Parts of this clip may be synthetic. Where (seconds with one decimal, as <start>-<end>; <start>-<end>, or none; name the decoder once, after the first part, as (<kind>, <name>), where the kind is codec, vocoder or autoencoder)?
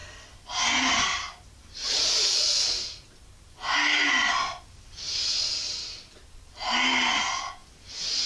none